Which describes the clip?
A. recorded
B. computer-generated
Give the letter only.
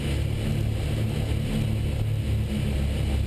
A